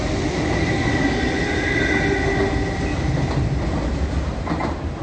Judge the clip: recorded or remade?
recorded